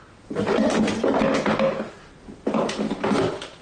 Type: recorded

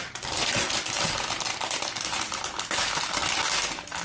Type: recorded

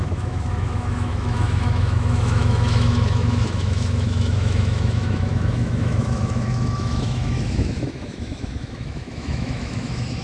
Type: remade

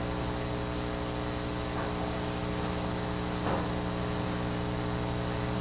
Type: recorded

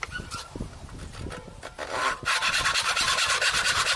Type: recorded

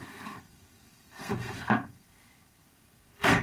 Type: remade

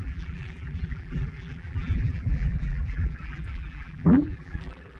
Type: remade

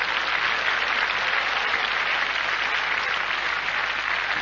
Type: recorded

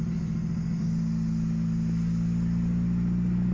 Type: recorded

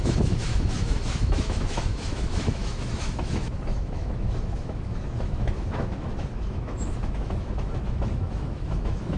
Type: remade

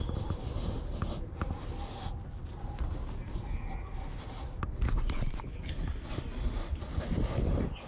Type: recorded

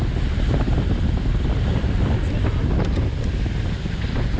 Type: recorded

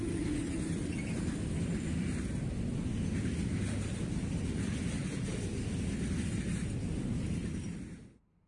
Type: recorded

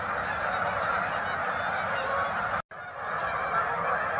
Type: recorded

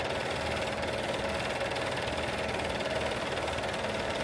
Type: recorded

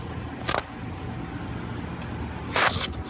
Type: recorded